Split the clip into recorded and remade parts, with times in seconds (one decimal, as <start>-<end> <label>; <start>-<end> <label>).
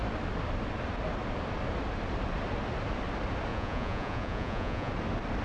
0.0-3.5 recorded; 3.5-4.9 remade; 4.9-5.4 recorded